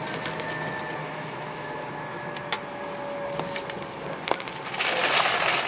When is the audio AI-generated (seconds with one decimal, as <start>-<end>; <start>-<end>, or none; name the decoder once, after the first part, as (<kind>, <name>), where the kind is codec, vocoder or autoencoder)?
1.0-1.7 (autoencoder, DAC-VAE)

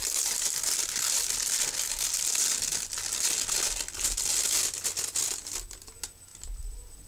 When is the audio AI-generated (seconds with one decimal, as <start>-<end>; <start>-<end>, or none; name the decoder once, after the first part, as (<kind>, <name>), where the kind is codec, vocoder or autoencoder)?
none

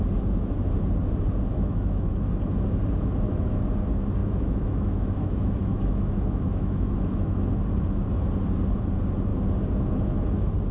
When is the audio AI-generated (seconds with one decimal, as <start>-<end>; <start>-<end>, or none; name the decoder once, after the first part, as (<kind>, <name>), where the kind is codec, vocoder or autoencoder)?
1.5-2.1 (autoencoder, DAC-VAE); 4.2-7.5

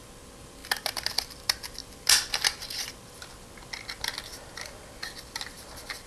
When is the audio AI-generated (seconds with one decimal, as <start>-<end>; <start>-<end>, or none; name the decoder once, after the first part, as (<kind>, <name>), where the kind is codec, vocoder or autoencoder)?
none

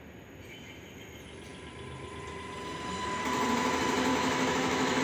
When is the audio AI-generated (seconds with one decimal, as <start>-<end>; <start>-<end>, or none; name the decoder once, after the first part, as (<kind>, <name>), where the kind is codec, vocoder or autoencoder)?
4.1-5.0 (autoencoder, DAC-VAE)

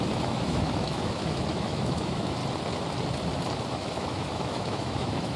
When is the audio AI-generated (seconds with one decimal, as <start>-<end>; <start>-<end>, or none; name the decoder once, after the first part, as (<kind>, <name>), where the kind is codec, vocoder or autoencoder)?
0.0-2.4 (autoencoder, DAC-VAE); 3.7-5.4

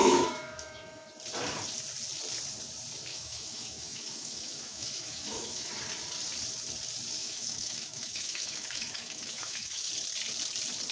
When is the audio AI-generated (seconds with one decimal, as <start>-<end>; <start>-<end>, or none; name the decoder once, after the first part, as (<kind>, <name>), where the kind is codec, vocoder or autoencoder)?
0.0-1.1 (autoencoder, DAC-VAE); 3.1-5.7; 7.2-9.9